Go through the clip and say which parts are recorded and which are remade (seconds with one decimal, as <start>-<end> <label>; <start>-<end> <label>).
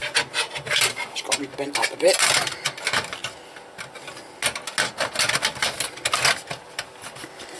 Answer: 0.0-7.6 recorded